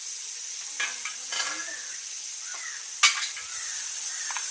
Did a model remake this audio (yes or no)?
no